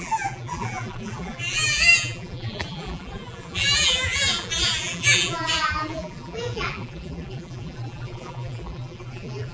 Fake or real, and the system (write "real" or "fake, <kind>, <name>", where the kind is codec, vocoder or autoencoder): fake, vocoder, BigVGAN v2